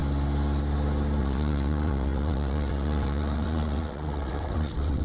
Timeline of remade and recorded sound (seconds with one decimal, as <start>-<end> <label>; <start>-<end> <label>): 0.0-1.2 recorded; 1.2-5.0 remade